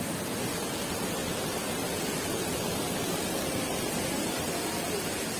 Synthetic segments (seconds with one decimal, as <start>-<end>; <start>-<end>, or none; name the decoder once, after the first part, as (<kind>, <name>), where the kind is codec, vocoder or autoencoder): none